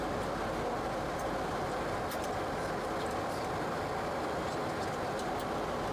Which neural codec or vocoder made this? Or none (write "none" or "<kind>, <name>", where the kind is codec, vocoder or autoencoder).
none